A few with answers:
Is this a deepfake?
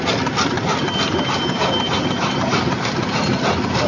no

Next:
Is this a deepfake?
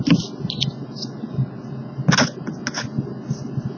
no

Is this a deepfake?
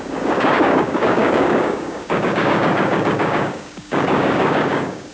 yes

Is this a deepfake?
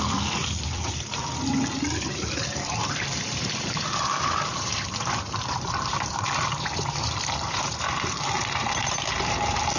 yes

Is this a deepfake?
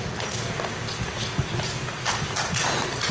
no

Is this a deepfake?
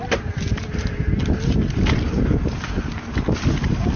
no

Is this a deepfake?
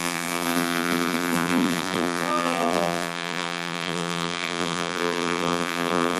yes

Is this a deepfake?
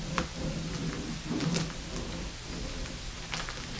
no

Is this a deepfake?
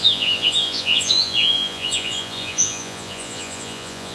yes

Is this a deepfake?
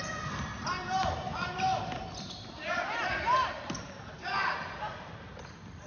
no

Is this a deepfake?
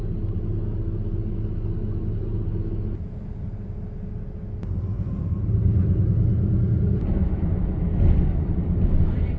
no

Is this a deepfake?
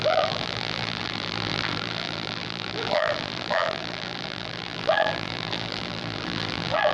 yes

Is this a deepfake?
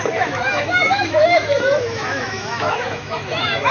yes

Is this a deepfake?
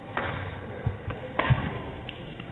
yes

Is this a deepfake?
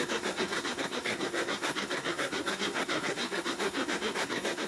yes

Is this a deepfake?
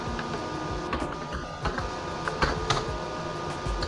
no